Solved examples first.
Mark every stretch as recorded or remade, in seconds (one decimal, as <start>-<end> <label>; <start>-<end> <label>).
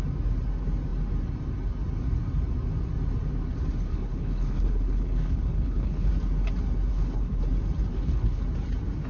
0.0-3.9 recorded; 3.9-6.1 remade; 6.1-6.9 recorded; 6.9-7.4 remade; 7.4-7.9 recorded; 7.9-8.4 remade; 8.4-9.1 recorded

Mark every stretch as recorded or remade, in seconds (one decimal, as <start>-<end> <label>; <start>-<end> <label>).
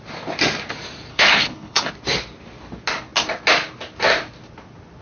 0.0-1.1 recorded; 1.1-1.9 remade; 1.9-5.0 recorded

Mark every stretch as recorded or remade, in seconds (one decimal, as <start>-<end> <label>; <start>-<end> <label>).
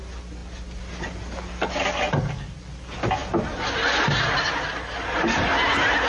0.0-6.1 recorded